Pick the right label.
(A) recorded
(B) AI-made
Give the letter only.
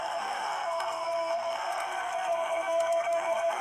B